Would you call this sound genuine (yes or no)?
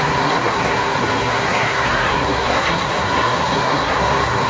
no